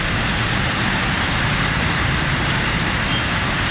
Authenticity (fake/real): fake